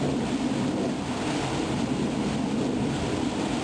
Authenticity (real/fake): real